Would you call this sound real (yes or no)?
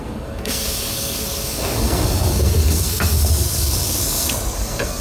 no